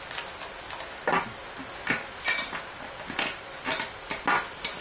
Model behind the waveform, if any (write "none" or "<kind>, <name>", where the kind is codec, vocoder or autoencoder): none